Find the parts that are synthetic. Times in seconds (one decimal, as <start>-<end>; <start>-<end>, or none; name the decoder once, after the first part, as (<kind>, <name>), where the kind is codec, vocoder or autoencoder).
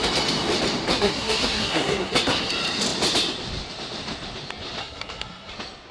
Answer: 0.9-2.5 (codec, SNAC); 4.8-5.5